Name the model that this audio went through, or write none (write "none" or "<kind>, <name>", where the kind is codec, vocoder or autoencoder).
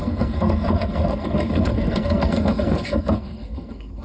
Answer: codec, SNAC